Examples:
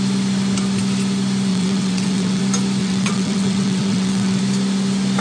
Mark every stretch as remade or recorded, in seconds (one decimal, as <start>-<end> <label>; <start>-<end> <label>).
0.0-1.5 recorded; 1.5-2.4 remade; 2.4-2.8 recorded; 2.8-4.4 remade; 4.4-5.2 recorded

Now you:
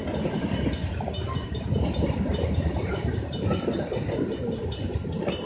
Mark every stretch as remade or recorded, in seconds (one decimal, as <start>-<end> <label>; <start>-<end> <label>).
0.0-0.8 recorded; 0.8-4.1 remade; 4.1-4.9 recorded; 4.9-5.5 remade

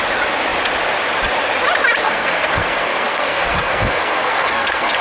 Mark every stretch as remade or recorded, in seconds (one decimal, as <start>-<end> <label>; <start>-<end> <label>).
0.0-2.0 recorded; 2.0-5.0 remade

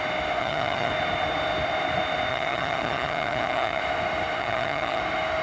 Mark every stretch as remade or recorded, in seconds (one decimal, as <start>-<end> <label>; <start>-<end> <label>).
0.0-0.4 recorded; 0.4-0.9 remade; 0.9-2.3 recorded; 2.3-3.8 remade; 3.8-4.4 recorded; 4.4-5.0 remade; 5.0-5.4 recorded

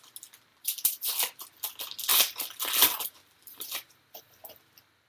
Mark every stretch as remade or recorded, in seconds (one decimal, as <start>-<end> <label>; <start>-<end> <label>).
0.0-0.5 recorded; 0.5-1.5 remade; 1.5-2.1 recorded; 2.1-2.6 remade; 2.6-3.2 recorded; 3.2-4.2 remade; 4.2-5.1 recorded

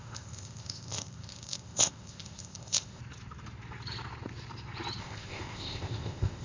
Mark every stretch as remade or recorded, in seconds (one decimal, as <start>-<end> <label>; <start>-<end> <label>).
0.0-3.0 remade; 3.0-5.0 recorded; 5.0-6.4 remade